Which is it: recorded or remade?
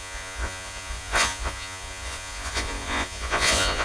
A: remade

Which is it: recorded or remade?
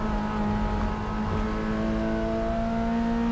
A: recorded